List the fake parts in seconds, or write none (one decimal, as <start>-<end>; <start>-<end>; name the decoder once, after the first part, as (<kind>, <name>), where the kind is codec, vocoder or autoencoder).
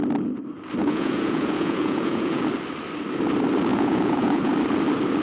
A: 0.8-2.4 (vocoder, Vocos); 3.7-4.5